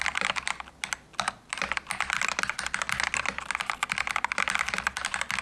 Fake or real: real